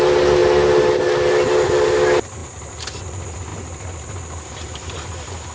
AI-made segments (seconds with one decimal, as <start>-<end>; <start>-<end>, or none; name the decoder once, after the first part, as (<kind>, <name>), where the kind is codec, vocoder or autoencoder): none